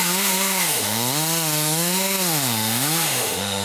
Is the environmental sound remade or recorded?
remade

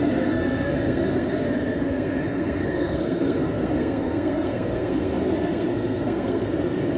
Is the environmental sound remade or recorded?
remade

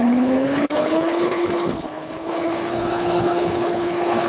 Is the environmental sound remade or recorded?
remade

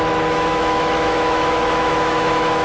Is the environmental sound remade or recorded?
remade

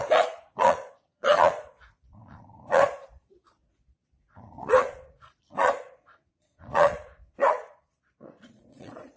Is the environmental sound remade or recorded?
remade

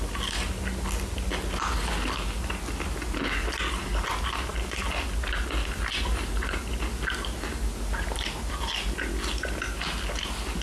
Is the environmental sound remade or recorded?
recorded